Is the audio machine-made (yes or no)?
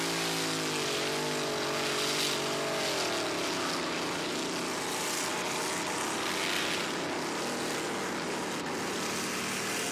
no